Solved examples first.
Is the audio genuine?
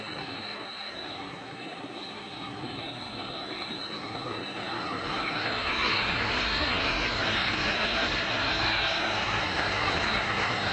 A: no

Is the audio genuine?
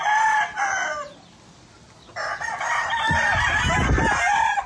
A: yes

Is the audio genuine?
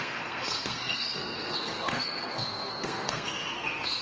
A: no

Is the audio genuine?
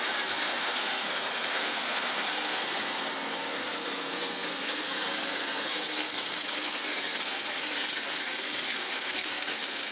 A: no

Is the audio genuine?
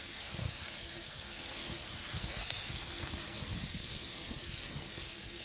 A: no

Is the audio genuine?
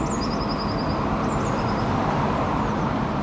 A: yes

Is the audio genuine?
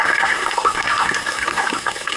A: no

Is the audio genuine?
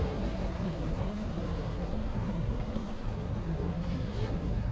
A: no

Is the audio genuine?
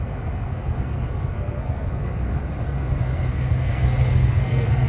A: no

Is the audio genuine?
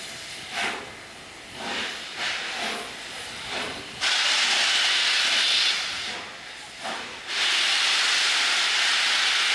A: yes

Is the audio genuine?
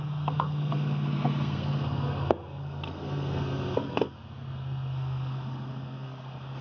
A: no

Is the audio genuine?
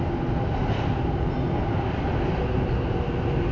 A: yes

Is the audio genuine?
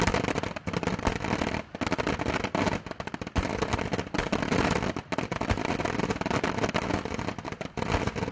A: yes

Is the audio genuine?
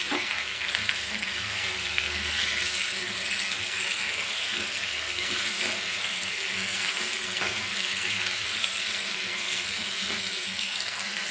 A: no